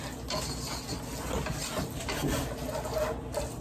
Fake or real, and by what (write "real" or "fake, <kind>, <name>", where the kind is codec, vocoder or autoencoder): real